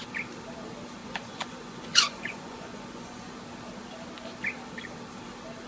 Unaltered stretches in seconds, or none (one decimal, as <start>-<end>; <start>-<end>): 0.0-1.0; 3.4-5.7